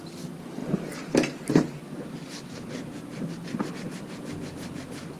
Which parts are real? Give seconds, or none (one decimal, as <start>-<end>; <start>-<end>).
0.0-5.2